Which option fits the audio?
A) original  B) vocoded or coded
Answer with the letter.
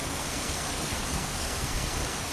B